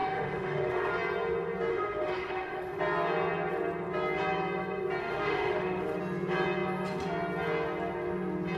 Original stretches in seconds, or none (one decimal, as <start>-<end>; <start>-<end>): 0.9-1.7; 2.8-5.0; 6.0-8.6